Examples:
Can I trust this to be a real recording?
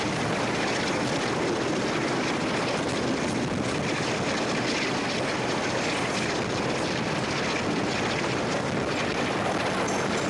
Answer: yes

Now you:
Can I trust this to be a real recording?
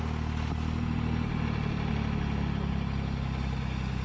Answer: yes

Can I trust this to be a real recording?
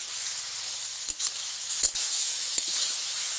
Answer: no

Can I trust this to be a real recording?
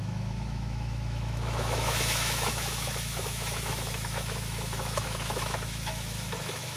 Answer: no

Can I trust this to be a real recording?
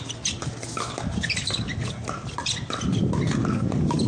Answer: yes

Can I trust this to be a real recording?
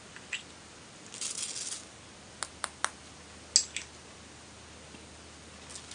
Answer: yes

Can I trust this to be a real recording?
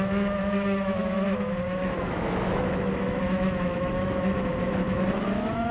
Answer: no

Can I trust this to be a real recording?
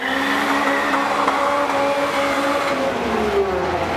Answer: yes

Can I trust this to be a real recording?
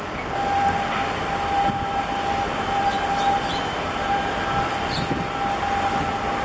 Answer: yes